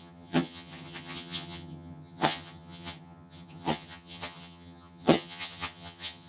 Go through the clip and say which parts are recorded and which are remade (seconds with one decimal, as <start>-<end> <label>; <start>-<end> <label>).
0.0-6.3 remade